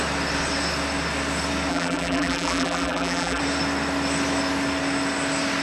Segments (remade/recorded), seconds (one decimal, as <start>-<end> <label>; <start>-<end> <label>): 0.0-1.7 recorded; 1.7-3.4 remade; 3.4-5.6 recorded